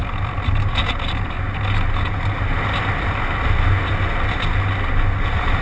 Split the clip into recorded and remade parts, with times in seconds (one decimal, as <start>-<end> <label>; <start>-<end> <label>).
0.0-5.6 recorded